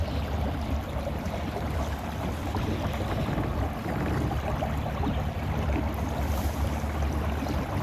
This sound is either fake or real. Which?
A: real